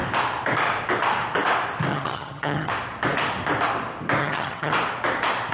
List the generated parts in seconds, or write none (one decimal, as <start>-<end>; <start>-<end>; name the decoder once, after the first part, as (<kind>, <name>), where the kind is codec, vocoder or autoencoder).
1.9-2.7 (vocoder, HiFi-GAN); 4.2-4.7